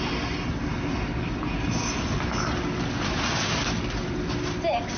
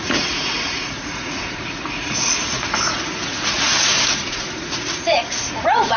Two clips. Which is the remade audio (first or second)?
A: second